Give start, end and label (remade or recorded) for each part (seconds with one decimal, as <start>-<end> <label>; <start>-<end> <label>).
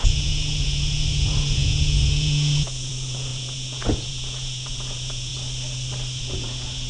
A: 0.0-5.3 remade; 5.3-6.2 recorded; 6.2-6.9 remade